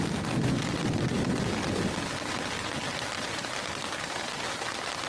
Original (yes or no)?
yes